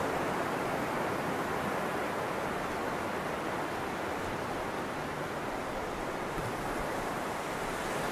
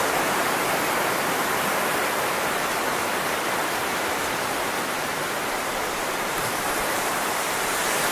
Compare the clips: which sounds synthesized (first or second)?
second